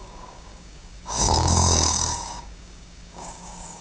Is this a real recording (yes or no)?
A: no